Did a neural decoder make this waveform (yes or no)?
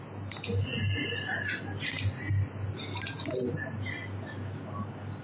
no